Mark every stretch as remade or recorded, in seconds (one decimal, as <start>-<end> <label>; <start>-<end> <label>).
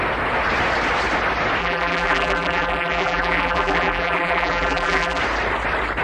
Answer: 0.0-1.6 recorded; 1.6-5.2 remade; 5.2-6.0 recorded